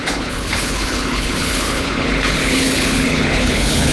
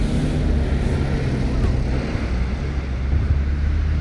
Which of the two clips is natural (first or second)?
second